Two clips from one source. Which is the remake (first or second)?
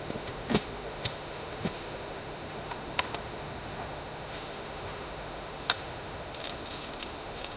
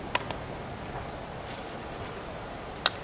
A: first